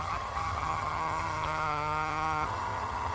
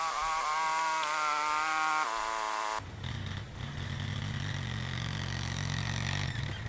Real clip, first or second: second